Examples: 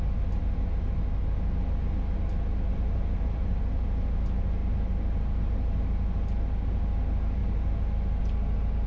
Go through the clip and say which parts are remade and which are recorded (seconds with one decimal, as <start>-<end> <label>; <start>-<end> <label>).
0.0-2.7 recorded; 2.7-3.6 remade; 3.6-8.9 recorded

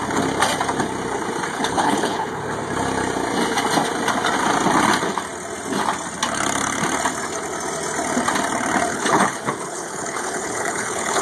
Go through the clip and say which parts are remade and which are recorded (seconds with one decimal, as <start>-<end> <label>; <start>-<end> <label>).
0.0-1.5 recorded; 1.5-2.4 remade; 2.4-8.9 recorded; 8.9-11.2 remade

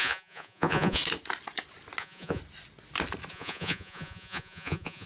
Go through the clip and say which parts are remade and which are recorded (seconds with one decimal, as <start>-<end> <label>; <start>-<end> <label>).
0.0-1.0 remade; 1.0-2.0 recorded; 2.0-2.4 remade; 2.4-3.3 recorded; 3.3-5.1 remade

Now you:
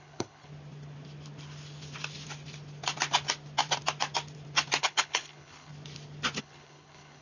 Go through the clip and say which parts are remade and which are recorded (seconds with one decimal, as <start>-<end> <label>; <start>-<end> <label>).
0.0-0.5 remade; 0.5-4.8 recorded; 4.8-5.7 remade; 5.7-6.4 recorded; 6.4-7.2 remade

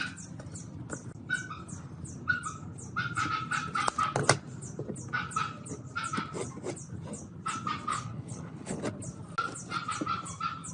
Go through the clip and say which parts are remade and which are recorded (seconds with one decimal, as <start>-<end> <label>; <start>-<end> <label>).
0.0-7.9 recorded; 7.9-8.8 remade; 8.8-10.7 recorded

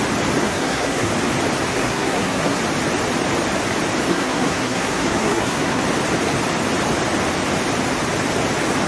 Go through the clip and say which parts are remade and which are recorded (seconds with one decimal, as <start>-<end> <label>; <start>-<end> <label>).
0.0-0.4 recorded; 0.4-1.1 remade; 1.1-1.7 recorded; 1.7-2.6 remade; 2.6-4.1 recorded; 4.1-5.8 remade; 5.8-8.9 recorded

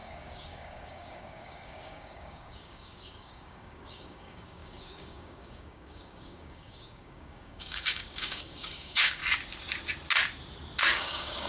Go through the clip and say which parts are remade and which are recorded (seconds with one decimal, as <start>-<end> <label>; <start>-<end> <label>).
0.0-9.2 remade; 9.2-10.8 recorded; 10.8-11.5 remade

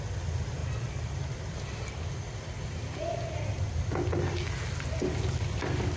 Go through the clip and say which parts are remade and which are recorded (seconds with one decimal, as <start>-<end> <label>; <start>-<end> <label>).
0.0-0.6 recorded; 0.6-1.8 remade; 1.8-6.0 recorded